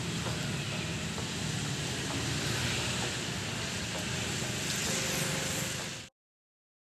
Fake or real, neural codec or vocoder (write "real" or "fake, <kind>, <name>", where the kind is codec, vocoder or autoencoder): real